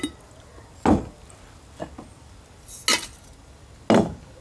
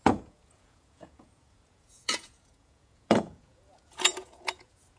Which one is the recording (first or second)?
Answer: first